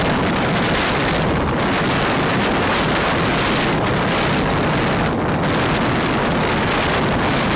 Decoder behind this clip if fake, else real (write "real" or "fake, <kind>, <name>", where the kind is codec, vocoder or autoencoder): real